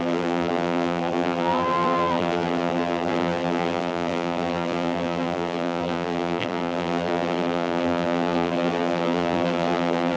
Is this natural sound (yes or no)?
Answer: no